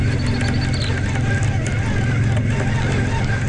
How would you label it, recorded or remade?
recorded